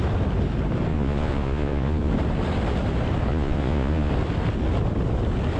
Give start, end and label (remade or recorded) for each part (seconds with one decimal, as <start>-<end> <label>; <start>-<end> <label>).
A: 0.0-0.9 recorded; 0.9-2.1 remade; 2.1-3.3 recorded; 3.3-4.1 remade; 4.1-5.6 recorded